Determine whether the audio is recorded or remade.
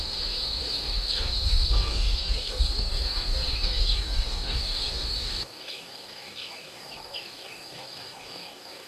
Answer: remade